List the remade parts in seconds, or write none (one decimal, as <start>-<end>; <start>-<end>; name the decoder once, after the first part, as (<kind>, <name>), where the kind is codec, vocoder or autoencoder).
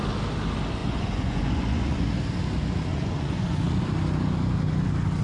0.8-2.0 (vocoder, Vocos); 2.9-3.8